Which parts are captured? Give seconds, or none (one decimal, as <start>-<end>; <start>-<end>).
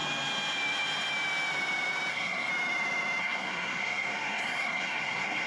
0.0-2.1; 2.5-3.2